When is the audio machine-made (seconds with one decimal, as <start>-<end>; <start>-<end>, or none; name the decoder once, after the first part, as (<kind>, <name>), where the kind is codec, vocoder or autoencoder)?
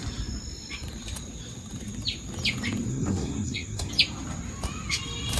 2.9-3.9 (codec, SNAC)